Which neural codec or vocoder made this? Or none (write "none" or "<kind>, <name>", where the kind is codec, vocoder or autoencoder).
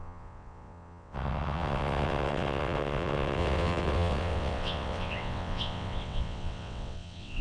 vocoder, WaveNeXt